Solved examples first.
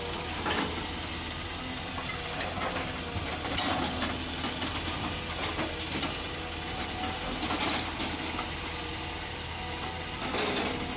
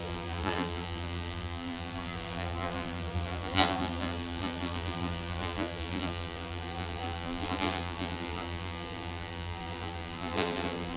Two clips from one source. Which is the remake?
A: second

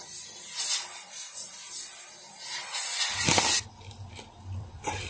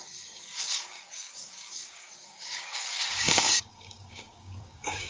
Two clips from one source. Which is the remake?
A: second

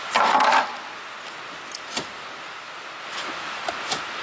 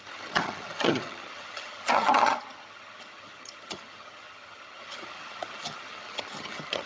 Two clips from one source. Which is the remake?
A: second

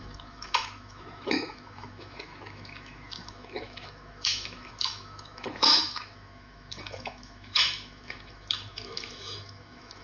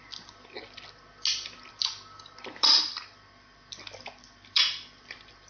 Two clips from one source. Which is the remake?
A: first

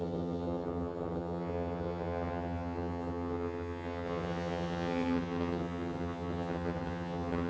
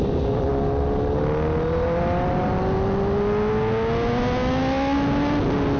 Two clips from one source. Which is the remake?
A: first